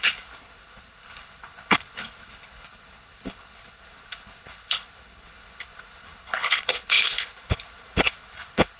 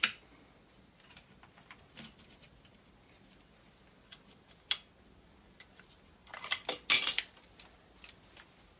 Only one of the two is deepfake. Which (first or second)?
first